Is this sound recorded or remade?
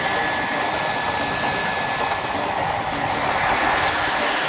recorded